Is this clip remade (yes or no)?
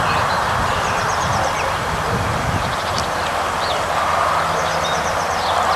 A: no